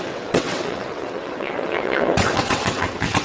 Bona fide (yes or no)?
no